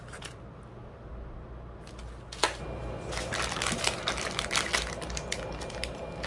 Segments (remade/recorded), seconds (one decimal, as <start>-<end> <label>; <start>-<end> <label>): 0.0-6.3 recorded